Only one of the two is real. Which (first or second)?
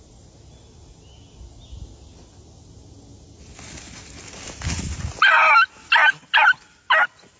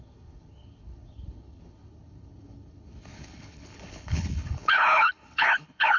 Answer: first